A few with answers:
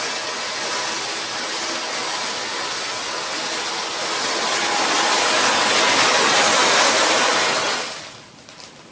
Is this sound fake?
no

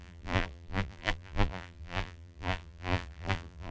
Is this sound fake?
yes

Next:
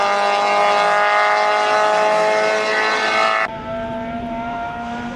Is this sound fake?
no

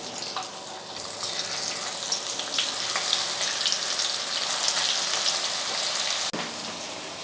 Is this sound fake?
no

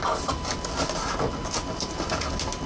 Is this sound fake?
no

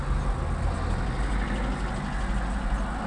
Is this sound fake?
no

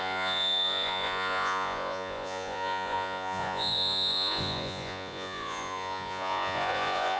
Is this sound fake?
yes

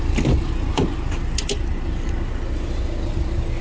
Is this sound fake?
no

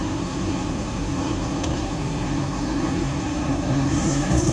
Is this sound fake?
yes